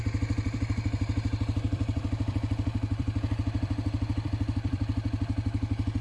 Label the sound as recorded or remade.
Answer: remade